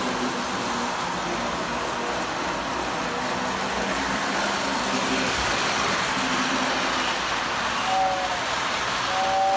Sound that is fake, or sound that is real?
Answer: real